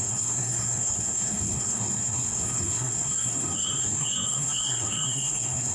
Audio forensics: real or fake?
fake